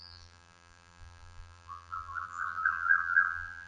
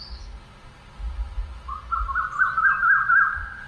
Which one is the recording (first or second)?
second